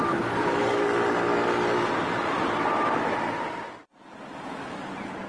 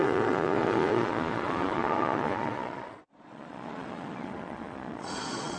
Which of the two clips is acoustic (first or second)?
first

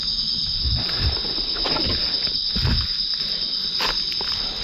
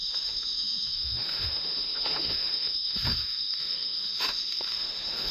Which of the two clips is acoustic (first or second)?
first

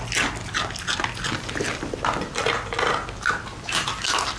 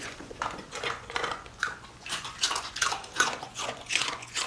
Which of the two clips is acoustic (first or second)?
first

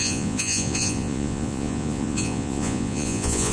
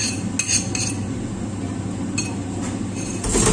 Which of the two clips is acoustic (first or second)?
second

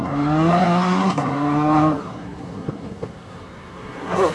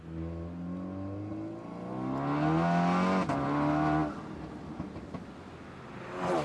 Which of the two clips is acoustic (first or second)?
second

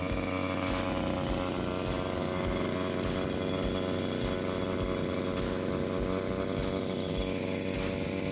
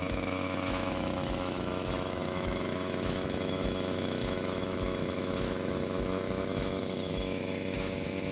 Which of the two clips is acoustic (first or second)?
first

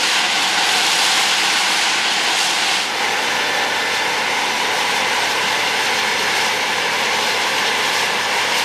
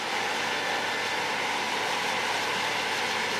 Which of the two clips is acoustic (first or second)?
second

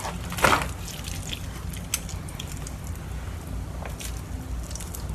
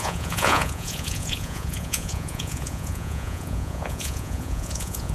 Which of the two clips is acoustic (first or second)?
first